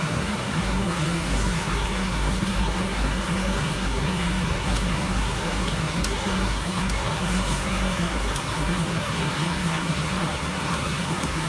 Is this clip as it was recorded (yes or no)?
no